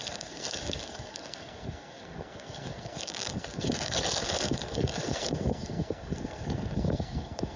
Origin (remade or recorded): remade